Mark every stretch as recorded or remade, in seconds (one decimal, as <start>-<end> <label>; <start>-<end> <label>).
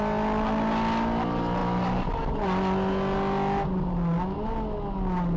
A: 0.0-5.4 recorded